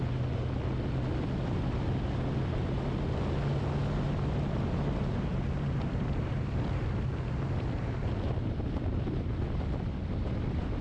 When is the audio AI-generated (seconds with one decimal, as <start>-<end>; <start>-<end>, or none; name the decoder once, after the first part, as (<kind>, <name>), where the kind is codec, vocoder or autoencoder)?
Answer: 5.3-8.1 (vocoder, BigVGAN v2)